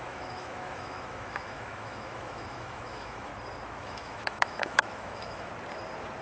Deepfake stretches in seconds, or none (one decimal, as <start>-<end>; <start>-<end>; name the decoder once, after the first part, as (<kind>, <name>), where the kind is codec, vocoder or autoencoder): 0.0-3.3 (autoencoder, DAC-VAE); 3.8-5.5